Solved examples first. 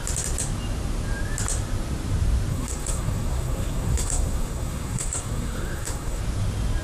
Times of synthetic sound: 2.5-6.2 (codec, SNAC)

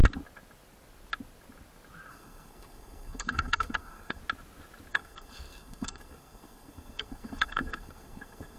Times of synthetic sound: 2.1-4.2 (codec, SNAC); 4.9-8.6

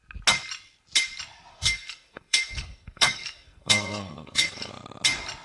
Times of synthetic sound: 1.5-4.7 (codec, SNAC)

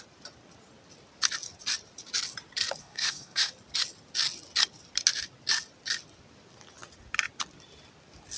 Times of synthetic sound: 2.8-3.5 (codec, SNAC)

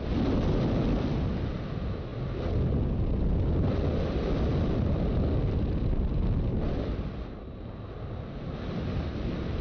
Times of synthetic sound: none